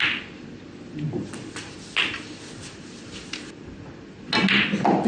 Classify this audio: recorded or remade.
recorded